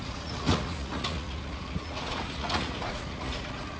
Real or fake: fake